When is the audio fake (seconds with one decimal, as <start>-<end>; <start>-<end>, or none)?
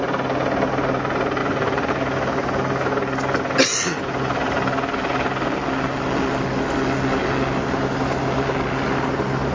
1.4-1.9